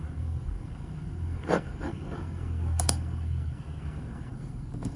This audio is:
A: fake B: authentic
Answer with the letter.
A